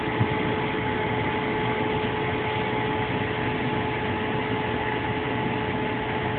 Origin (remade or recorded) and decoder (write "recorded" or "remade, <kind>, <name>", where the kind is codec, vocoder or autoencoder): recorded